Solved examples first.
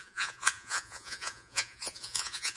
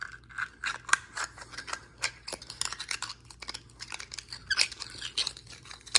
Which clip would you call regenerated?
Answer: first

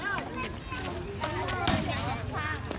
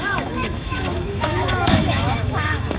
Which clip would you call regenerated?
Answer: second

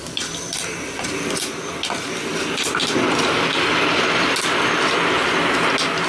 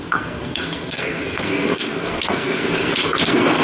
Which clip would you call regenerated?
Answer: second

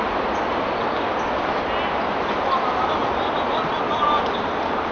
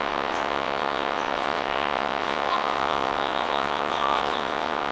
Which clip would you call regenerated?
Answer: second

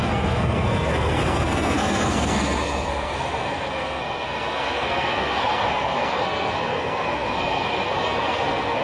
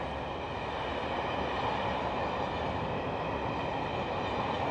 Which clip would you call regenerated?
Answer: first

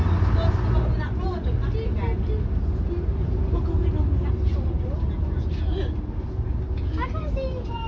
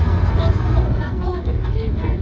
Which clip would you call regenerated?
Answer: second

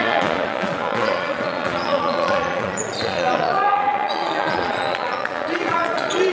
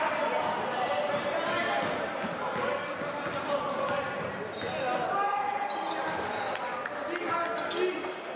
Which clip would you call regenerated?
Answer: first